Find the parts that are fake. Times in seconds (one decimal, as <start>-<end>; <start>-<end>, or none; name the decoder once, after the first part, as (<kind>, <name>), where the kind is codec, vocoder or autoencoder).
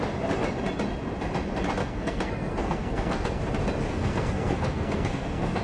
1.8-3.4 (codec, SNAC); 3.9-5.6